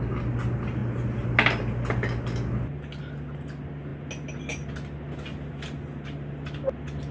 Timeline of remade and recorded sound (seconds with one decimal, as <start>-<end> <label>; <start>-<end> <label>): 0.0-7.1 recorded